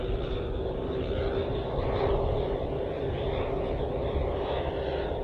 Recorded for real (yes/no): yes